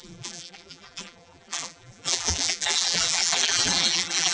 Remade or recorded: remade